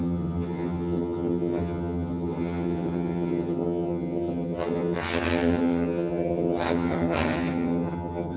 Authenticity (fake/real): fake